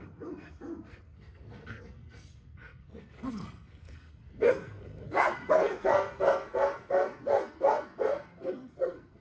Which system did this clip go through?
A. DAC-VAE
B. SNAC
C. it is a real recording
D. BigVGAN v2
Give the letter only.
B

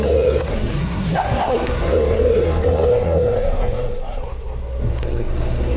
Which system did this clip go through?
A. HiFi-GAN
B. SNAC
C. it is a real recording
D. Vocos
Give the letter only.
B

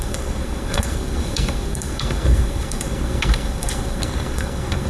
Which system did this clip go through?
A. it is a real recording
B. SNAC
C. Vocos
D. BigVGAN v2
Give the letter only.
B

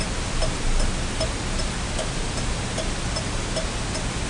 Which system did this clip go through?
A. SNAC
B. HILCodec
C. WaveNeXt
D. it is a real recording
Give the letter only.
D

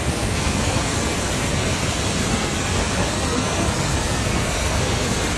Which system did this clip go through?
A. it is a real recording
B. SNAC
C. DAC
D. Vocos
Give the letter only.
B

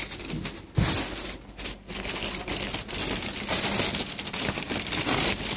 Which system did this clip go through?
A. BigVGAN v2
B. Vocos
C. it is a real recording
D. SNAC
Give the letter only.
C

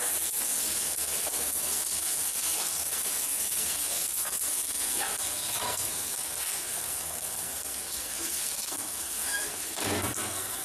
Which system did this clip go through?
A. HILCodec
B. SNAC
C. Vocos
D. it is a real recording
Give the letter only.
B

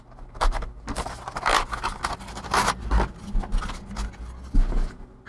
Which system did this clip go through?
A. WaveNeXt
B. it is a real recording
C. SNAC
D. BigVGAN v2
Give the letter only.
B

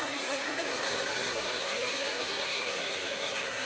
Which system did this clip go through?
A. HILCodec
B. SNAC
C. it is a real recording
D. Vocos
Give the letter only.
B